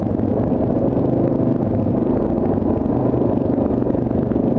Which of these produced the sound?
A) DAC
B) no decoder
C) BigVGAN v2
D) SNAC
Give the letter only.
C